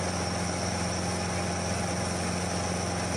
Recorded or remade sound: recorded